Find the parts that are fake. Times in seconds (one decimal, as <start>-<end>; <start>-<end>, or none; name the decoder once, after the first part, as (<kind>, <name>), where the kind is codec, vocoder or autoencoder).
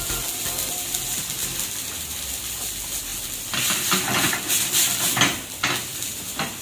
none